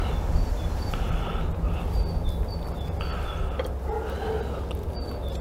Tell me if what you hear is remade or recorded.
recorded